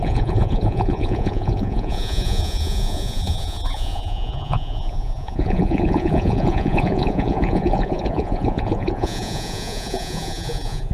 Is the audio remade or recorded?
remade